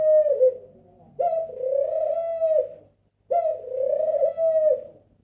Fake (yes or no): no